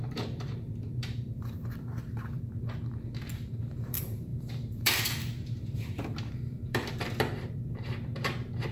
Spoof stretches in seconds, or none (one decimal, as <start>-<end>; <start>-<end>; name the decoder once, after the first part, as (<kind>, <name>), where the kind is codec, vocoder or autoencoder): 0.0-2.5 (vocoder, BigVGAN v2); 3.3-8.7